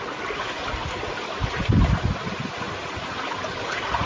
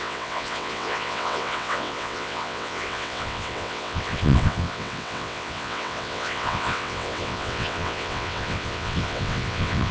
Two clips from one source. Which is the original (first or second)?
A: first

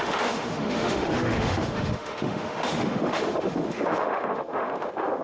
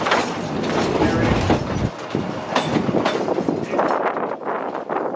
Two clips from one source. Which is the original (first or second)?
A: second